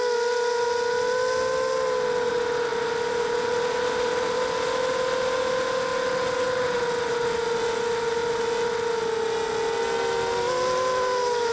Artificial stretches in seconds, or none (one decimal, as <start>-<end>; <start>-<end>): 2.7-4.8